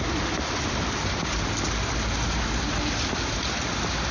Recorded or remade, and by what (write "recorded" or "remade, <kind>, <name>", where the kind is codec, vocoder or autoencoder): recorded